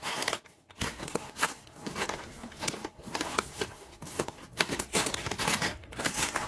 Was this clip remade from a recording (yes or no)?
yes